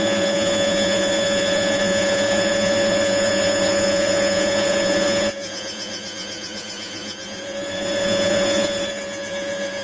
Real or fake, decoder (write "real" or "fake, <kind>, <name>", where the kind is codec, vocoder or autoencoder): fake, vocoder, Vocos